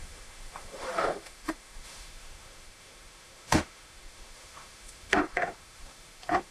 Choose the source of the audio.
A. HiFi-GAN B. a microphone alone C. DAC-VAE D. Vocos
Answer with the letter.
C